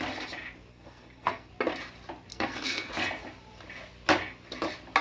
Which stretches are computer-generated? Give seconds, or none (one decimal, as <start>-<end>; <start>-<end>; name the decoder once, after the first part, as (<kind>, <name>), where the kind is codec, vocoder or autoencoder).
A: 0.7-1.5 (codec, SNAC); 2.3-2.9